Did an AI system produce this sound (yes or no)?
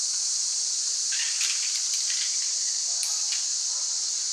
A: no